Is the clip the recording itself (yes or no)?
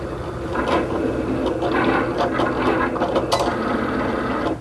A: yes